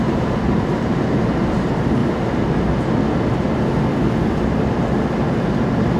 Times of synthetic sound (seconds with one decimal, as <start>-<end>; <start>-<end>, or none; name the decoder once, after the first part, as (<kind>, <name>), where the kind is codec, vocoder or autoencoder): 0.0-2.0 (vocoder, BigVGAN v2); 5.1-6.0